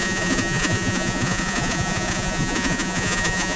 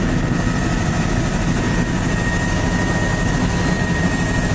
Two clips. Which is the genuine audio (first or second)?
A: second